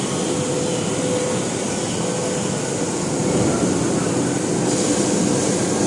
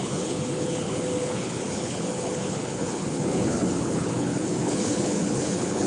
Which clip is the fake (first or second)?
second